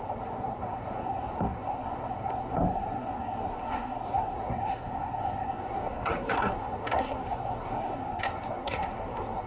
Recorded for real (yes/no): no